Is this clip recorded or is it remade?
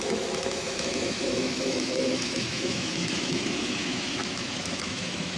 remade